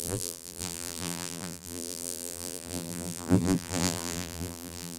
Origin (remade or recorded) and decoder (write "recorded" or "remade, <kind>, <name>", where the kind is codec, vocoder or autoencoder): remade, vocoder, BigVGAN v2